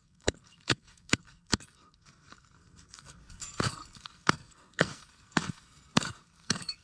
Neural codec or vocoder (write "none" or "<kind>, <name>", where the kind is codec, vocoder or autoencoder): codec, SNAC